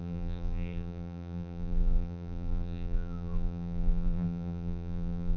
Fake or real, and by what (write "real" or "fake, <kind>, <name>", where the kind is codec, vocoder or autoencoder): fake, vocoder, BigVGAN v2